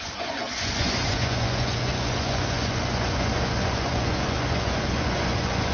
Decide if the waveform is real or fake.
fake